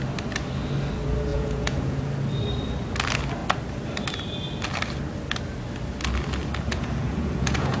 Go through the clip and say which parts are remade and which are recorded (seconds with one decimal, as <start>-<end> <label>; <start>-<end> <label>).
0.0-1.3 recorded; 1.3-2.0 remade; 2.0-6.7 recorded; 6.7-7.8 remade